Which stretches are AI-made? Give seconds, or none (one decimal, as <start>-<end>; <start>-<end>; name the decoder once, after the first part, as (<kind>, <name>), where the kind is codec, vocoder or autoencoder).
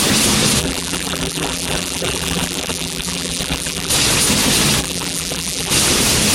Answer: 0.6-3.9 (vocoder, BigVGAN v2); 4.8-5.7